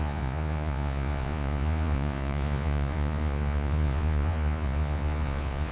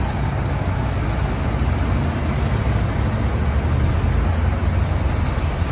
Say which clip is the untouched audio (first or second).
second